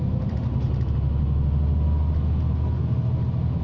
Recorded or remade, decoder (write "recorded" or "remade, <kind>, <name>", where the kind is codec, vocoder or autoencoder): recorded